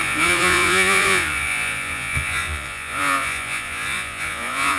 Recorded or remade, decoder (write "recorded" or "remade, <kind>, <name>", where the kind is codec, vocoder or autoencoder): remade, vocoder, Vocos